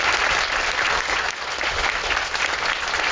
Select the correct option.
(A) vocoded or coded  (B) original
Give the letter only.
B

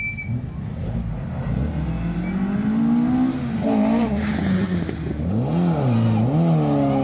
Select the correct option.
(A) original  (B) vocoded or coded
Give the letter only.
A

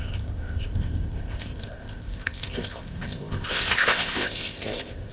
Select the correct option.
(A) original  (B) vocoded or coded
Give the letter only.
B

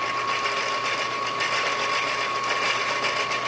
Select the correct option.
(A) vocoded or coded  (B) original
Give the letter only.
B